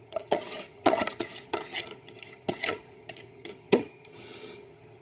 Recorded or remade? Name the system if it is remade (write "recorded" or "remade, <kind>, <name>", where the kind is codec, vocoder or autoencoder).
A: remade, vocoder, HiFi-GAN